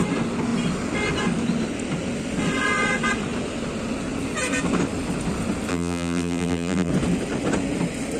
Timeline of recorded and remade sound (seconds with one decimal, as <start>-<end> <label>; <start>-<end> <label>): 0.0-5.7 recorded; 5.7-6.9 remade; 6.9-8.2 recorded